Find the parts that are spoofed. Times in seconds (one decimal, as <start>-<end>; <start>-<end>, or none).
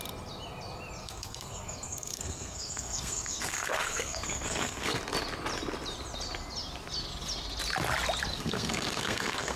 1.0-5.0; 8.3-9.6